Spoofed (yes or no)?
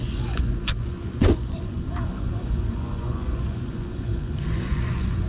yes